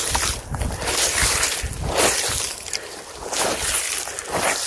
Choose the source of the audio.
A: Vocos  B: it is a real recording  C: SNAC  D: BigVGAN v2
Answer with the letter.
B